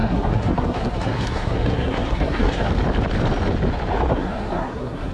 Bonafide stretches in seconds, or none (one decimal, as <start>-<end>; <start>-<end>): 2.7-4.1